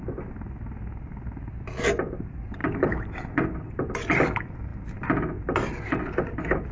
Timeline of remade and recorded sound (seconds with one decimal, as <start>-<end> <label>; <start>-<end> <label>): 0.0-6.7 recorded